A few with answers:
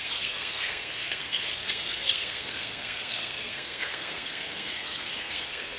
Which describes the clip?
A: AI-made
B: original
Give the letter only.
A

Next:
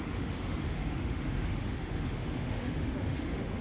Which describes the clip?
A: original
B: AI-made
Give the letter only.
B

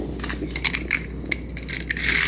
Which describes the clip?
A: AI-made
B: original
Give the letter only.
B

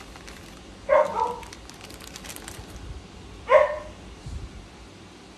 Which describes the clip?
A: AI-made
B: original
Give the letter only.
B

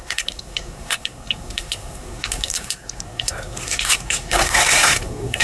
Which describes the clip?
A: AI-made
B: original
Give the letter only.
A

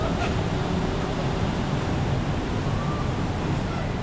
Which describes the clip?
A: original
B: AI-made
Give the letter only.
B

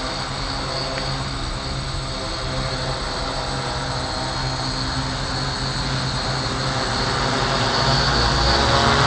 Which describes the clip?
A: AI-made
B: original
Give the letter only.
B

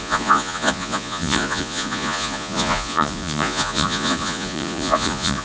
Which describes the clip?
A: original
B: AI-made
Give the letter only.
B